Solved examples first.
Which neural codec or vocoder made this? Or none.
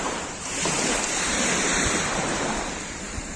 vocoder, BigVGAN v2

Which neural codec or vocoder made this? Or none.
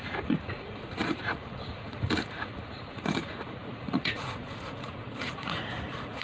vocoder, Vocos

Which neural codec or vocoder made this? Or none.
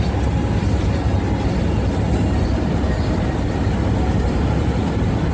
none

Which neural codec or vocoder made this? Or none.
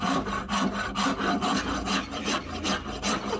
none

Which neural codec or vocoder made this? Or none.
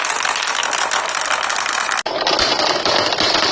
none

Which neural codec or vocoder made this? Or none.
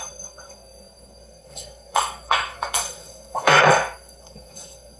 codec, SNAC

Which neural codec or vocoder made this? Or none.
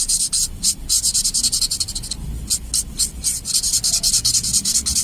none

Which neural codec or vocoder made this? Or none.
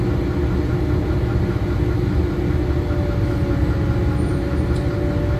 none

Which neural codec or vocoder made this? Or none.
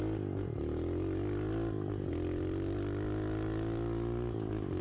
none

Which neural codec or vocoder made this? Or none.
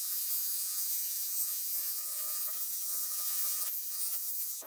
vocoder, Vocos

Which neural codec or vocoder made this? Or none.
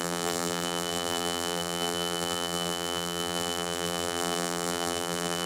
vocoder, BigVGAN v2